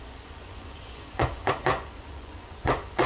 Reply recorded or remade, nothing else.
remade